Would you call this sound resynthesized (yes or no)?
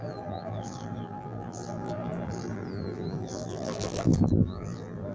yes